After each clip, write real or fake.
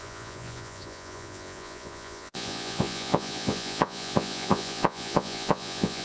fake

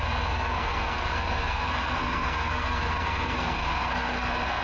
fake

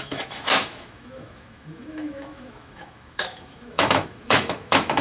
fake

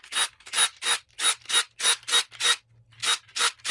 real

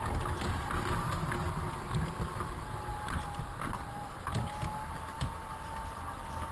real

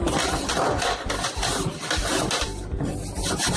real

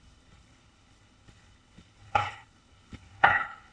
fake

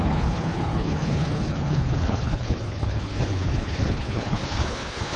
fake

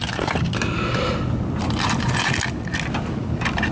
real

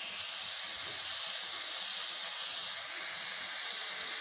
real